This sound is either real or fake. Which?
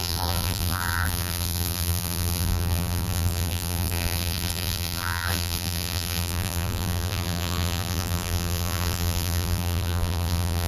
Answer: fake